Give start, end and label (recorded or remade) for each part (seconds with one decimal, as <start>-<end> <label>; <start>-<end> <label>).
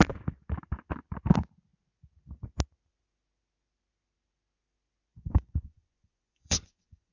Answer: 0.0-5.1 recorded; 5.1-7.1 remade